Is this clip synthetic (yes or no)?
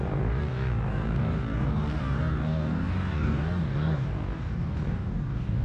yes